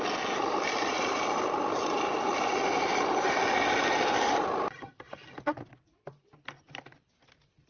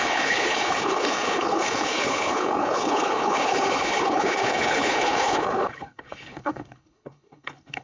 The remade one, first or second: second